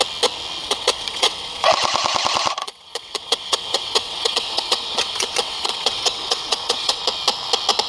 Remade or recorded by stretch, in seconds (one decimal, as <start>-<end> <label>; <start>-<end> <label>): 0.0-0.6 recorded; 0.6-1.7 remade; 1.7-2.6 recorded; 2.6-7.0 remade; 7.0-7.9 recorded